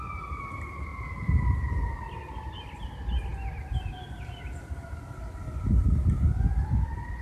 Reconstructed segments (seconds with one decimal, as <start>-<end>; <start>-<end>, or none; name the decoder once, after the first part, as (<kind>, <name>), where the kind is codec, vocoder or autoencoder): none